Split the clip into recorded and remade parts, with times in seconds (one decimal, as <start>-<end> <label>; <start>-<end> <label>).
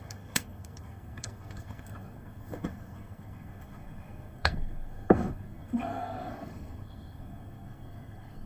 0.0-8.5 remade